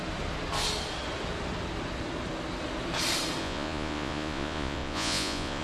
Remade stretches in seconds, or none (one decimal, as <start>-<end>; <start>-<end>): 3.4-5.6